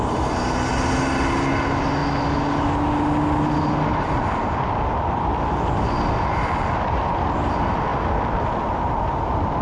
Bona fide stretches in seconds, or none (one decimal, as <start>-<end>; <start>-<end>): 0.0-9.6